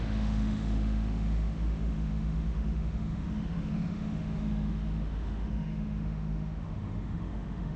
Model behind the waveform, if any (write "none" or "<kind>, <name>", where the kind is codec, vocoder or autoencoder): autoencoder, DAC-VAE